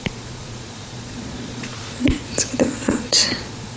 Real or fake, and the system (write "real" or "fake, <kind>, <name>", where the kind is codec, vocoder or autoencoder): fake, vocoder, Vocos